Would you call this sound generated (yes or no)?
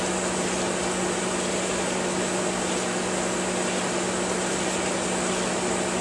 no